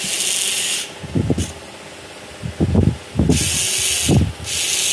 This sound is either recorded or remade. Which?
recorded